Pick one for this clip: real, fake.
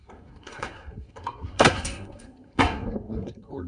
fake